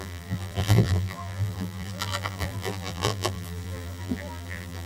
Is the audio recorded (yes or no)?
no